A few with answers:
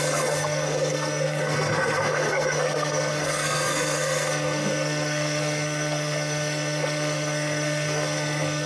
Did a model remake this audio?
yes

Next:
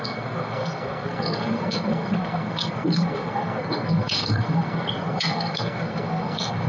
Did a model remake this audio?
yes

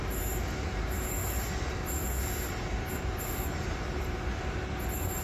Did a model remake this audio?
no